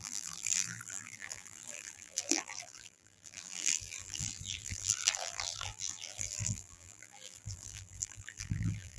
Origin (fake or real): fake